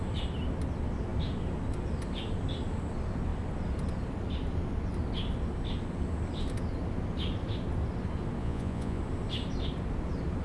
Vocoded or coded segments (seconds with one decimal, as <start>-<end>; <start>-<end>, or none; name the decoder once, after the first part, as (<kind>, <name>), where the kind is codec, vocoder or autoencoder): 8.4-9.0 (vocoder, Vocos)